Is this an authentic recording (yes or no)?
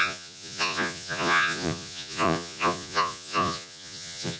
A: no